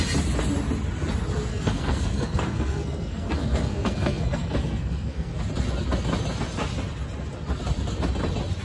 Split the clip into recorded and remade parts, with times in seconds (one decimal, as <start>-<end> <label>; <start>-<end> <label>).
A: 0.0-1.5 recorded; 1.5-5.4 remade; 5.4-8.6 recorded